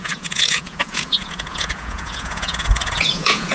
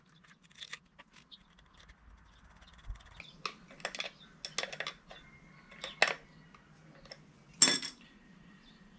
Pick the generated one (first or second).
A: first